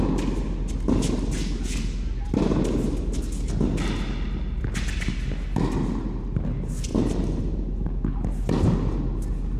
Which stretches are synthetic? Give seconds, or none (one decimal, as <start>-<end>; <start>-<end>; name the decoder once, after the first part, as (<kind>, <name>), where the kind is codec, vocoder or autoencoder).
none

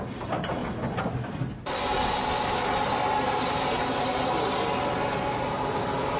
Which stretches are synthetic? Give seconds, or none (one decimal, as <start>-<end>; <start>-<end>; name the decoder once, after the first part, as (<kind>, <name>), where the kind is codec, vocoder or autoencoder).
none

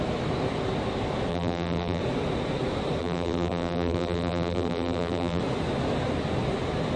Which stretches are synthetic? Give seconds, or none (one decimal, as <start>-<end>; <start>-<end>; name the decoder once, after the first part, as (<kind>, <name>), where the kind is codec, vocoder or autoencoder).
1.3-2.0 (vocoder, BigVGAN v2); 3.0-5.4

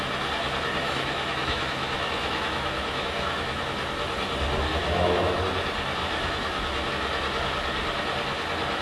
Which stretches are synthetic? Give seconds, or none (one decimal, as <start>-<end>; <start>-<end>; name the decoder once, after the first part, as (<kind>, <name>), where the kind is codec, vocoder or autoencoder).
0.8-3.6 (autoencoder, DAC-VAE); 4.8-5.4; 6.0-6.9